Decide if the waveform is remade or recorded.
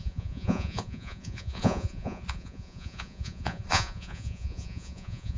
remade